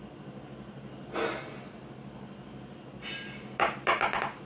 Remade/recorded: recorded